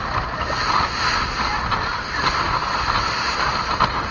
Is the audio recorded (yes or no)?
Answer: yes